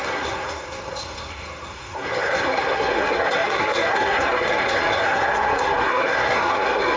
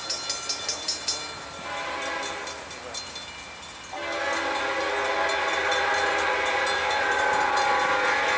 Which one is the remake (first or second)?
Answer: first